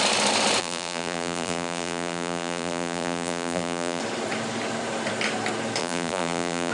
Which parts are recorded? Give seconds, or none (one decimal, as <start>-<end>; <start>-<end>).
0.0-0.6; 4.0-5.8